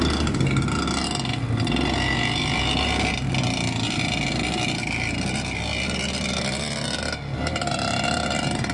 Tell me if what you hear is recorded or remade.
recorded